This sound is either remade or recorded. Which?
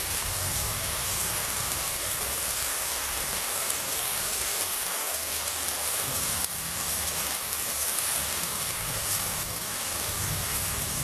remade